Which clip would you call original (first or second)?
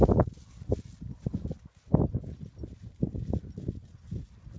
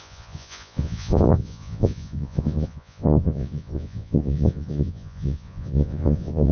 first